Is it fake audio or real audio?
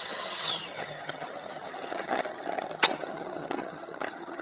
fake